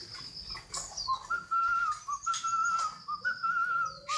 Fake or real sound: real